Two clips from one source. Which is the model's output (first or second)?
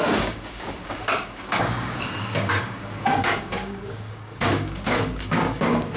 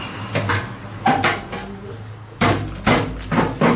first